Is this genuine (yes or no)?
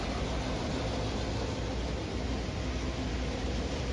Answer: yes